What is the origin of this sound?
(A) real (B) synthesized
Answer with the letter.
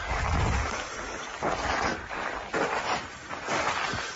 A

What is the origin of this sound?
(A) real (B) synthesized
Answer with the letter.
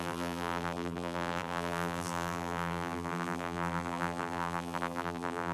B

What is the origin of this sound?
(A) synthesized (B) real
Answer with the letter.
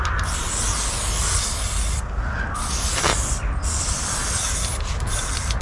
B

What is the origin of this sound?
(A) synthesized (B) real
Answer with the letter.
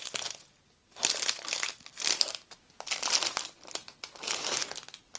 B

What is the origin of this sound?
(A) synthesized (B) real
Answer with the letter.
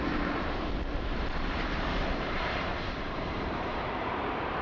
A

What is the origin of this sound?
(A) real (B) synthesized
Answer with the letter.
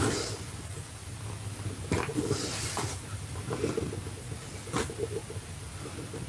A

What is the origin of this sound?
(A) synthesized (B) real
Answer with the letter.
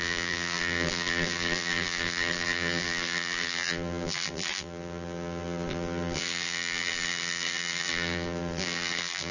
A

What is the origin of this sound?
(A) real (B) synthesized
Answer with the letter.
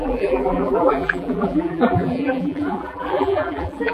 B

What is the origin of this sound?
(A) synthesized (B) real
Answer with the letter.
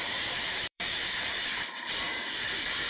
A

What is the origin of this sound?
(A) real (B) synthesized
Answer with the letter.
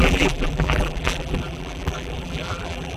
B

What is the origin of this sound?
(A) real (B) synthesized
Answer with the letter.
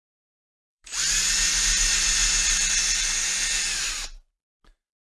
B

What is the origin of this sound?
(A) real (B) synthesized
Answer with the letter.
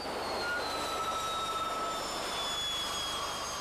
A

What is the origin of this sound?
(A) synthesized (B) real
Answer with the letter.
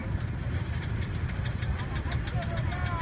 B